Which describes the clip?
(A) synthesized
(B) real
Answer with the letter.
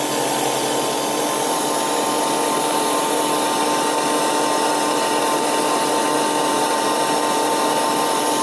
B